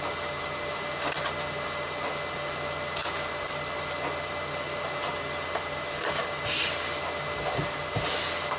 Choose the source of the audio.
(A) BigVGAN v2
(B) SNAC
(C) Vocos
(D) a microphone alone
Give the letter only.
D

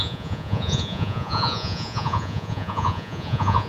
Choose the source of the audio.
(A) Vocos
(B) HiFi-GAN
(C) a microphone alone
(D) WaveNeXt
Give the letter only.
A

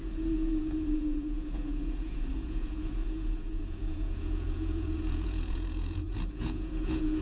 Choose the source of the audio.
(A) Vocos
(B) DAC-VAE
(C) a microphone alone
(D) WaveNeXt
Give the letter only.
A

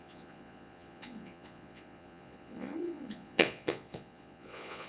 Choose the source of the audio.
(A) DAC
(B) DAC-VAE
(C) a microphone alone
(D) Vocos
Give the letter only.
D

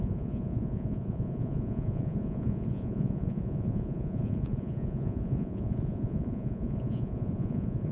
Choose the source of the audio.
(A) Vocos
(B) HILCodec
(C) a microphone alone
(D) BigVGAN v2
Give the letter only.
A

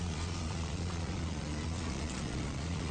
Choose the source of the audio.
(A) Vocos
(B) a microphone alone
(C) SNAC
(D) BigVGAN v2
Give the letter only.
A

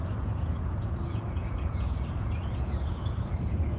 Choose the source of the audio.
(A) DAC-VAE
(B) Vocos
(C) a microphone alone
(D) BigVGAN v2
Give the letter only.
B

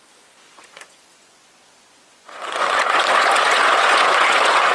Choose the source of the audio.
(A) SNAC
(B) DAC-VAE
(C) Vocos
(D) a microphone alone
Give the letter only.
C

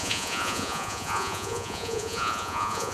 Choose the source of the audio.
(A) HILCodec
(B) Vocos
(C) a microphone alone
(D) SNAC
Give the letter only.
B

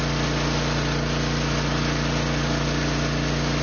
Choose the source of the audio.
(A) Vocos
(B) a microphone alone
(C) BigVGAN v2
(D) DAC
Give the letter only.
B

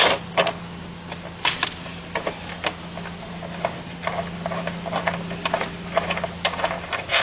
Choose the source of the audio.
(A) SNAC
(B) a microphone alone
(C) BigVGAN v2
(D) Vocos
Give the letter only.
B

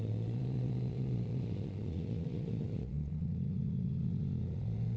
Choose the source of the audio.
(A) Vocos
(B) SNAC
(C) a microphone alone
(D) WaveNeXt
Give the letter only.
A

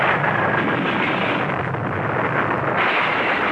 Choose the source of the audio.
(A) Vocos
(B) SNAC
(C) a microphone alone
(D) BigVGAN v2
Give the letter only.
C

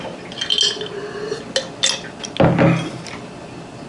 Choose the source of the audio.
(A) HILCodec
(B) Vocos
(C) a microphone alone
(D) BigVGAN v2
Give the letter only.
C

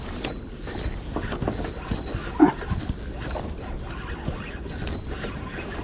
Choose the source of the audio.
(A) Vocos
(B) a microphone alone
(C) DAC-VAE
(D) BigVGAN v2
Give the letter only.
B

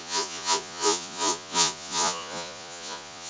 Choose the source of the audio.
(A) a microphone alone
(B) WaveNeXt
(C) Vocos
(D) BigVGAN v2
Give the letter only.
C